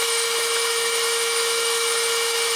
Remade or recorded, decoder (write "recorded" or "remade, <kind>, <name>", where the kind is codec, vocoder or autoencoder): remade, autoencoder, DAC-VAE